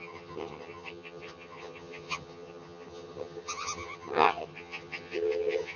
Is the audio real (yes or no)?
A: no